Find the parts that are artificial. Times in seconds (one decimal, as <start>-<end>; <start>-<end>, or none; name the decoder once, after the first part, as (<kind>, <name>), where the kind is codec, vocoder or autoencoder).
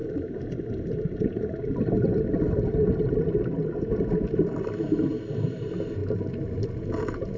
none